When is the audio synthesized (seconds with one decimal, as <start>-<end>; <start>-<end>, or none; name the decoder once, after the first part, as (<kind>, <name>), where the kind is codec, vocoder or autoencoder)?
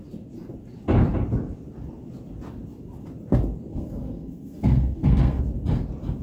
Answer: 3.7-5.4 (codec, SNAC)